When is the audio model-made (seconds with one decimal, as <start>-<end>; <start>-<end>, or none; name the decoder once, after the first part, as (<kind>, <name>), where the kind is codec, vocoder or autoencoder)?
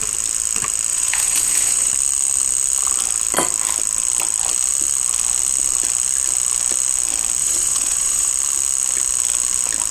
0.9-1.9 (vocoder, Vocos); 7.4-8.3